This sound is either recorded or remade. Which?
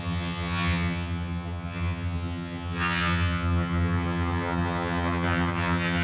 remade